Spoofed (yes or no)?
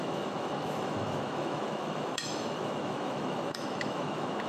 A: yes